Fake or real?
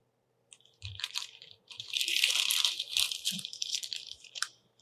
fake